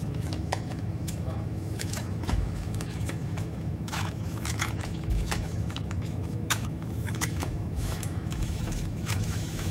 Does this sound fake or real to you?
fake